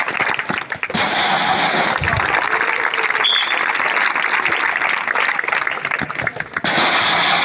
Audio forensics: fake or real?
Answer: real